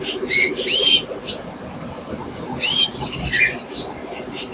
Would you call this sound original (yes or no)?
yes